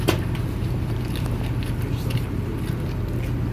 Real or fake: real